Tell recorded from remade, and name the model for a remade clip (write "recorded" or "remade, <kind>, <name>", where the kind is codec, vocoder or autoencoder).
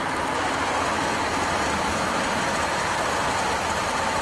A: recorded